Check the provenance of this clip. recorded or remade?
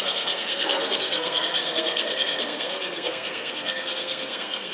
remade